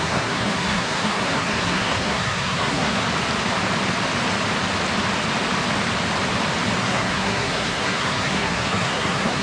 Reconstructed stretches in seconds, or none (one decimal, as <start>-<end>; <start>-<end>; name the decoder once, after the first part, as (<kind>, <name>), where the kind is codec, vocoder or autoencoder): 0.0-3.0 (codec, SNAC); 6.8-9.4